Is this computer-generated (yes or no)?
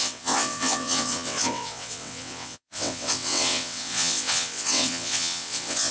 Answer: yes